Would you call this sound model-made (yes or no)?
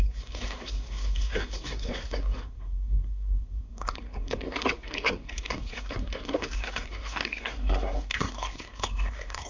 yes